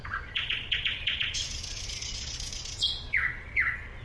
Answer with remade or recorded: remade